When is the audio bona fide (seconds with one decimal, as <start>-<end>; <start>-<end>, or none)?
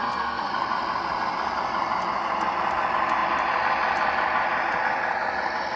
0.5-5.8